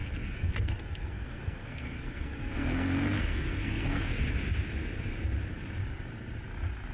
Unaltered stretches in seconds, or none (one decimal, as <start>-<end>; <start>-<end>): 4.1-6.9